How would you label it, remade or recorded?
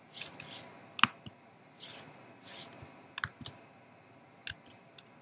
recorded